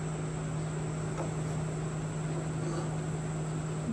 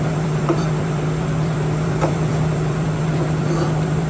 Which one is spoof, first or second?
second